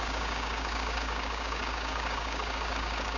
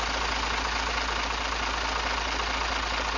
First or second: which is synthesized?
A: first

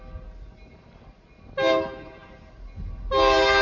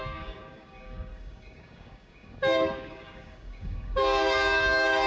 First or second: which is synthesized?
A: second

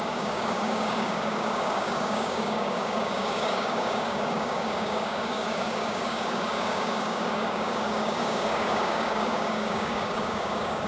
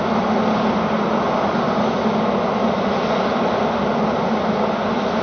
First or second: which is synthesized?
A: first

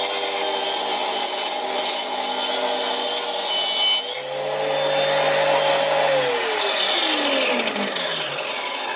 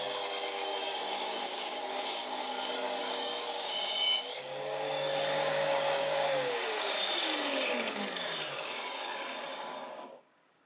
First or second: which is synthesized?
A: second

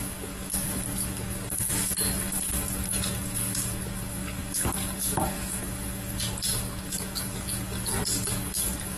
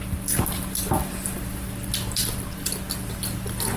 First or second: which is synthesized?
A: first